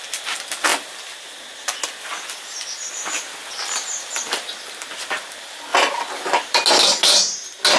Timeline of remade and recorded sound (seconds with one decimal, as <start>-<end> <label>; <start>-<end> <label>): 0.0-3.4 recorded; 3.4-4.3 remade; 4.3-7.8 recorded